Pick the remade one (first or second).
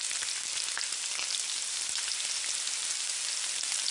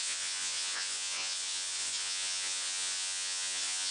second